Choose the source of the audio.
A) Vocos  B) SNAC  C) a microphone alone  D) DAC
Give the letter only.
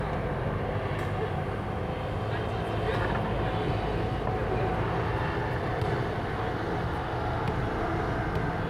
C